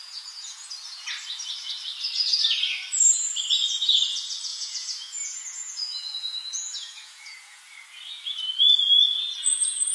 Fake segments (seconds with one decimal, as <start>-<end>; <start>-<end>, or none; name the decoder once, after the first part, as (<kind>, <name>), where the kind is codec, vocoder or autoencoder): 0.0-0.7 (vocoder, Vocos); 4.5-7.6